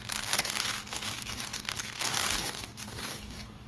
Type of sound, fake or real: fake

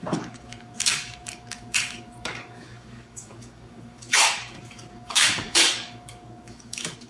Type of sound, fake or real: fake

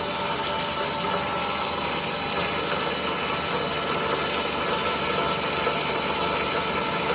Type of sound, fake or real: real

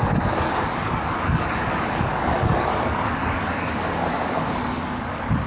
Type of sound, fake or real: fake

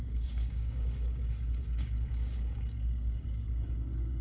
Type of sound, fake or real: fake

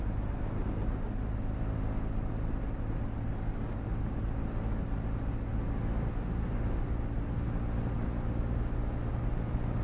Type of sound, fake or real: real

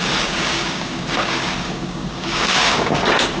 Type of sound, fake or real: fake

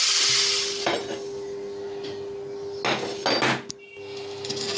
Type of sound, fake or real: real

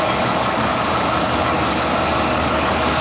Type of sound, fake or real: fake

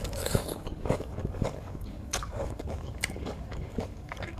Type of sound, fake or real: fake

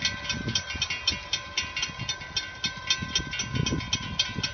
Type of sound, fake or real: real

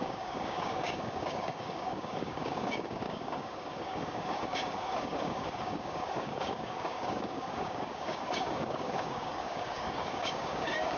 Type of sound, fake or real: fake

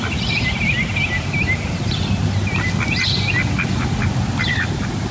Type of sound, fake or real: real